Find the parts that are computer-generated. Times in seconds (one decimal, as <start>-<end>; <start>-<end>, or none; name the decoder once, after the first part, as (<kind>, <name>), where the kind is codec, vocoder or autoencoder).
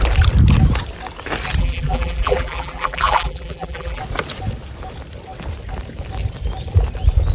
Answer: 1.6-4.0 (vocoder, BigVGAN v2)